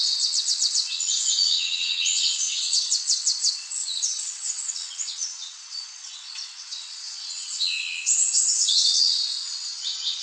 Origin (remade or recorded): remade